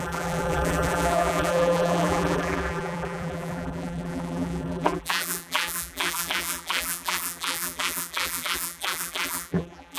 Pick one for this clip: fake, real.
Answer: fake